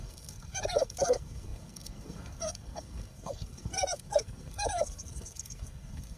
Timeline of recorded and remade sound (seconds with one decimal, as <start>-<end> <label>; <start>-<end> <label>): 0.0-6.2 remade